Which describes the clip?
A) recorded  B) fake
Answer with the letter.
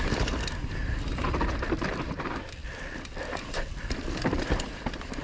B